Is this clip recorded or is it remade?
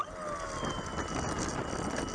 recorded